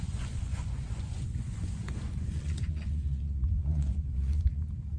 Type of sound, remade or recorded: remade